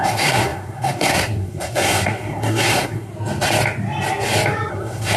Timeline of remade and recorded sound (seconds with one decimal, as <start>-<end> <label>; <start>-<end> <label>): 0.0-3.1 remade; 3.1-4.7 recorded; 4.7-5.2 remade